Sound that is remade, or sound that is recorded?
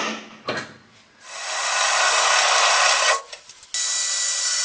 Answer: recorded